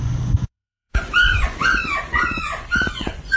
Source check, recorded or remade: remade